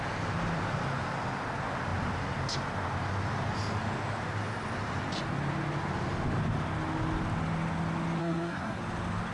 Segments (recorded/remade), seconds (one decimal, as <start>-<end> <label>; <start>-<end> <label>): 0.0-8.2 recorded; 8.2-8.8 remade; 8.8-9.3 recorded